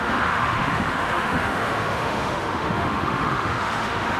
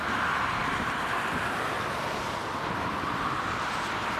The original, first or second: second